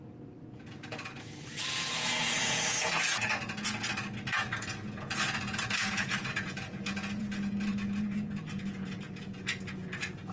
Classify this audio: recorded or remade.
remade